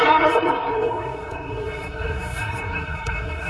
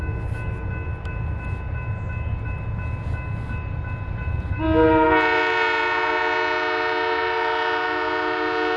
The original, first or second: second